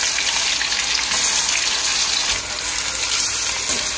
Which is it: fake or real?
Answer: real